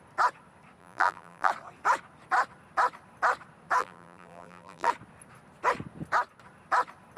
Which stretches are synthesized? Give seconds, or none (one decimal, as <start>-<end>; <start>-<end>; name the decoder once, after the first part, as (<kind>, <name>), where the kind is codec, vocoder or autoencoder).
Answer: 0.8-1.5 (vocoder, BigVGAN v2); 3.8-4.9